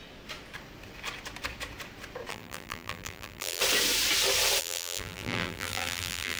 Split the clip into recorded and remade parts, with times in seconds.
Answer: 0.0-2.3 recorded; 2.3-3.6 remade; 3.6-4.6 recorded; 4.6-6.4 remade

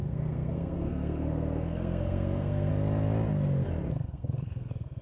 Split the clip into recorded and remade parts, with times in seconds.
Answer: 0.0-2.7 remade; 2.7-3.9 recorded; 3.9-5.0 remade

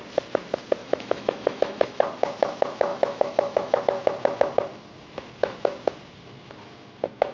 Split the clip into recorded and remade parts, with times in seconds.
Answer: 0.0-0.8 recorded; 0.8-2.0 remade; 2.0-2.9 recorded; 2.9-3.8 remade; 3.8-7.3 recorded

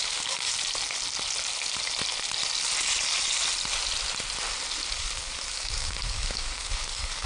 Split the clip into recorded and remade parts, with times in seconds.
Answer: 0.0-0.5 remade; 0.5-4.9 recorded; 4.9-7.3 remade

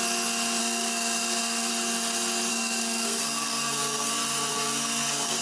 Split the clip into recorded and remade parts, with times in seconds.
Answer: 0.0-0.6 recorded; 0.6-1.7 remade; 1.7-2.5 recorded; 2.5-4.1 remade; 4.1-4.5 recorded; 4.5-5.4 remade

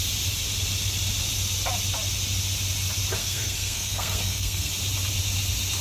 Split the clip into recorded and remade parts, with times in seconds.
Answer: 0.0-3.2 recorded; 3.2-4.7 remade; 4.7-5.8 recorded